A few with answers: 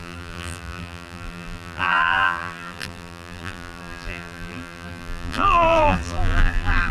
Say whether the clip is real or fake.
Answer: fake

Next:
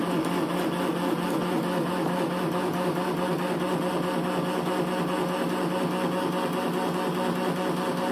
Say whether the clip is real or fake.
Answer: real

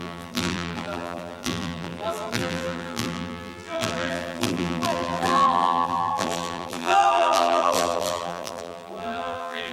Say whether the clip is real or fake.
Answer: fake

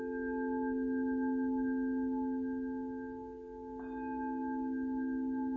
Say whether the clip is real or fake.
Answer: real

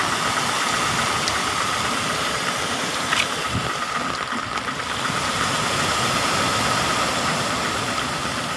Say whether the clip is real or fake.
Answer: real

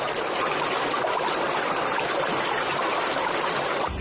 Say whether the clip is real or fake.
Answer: real